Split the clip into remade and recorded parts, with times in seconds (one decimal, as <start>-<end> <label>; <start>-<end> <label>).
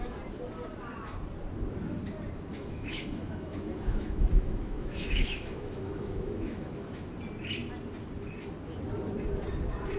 0.0-2.5 recorded; 2.5-7.1 remade; 7.1-10.0 recorded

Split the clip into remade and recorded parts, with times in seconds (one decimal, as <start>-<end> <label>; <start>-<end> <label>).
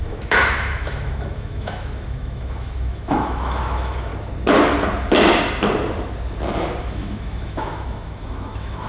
0.0-4.1 remade; 4.1-6.8 recorded; 6.8-8.9 remade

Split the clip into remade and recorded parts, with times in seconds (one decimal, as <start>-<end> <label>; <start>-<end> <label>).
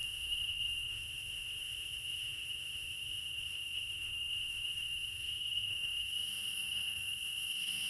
0.0-7.9 remade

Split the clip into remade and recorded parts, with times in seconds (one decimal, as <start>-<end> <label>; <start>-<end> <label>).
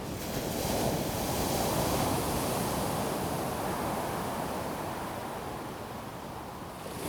0.0-7.1 recorded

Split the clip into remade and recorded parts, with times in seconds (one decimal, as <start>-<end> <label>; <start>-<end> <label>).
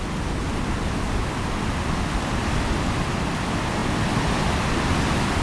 0.0-5.4 recorded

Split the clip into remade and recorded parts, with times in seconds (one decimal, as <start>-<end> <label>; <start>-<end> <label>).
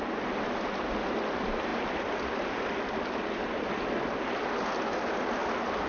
0.0-5.9 recorded